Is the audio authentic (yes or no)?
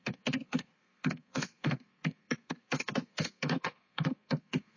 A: no